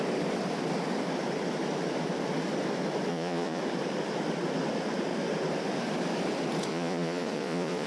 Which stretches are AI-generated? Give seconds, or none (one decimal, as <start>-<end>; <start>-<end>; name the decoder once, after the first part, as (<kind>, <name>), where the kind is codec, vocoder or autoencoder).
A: 3.1-3.6 (vocoder, Vocos); 6.7-7.9